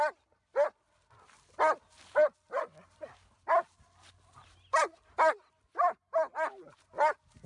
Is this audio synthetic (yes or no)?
no